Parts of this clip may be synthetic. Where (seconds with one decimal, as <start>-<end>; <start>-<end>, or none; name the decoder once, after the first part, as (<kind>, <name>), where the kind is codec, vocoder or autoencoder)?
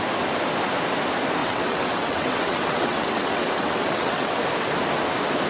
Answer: 1.4-4.4 (vocoder, WaveNeXt)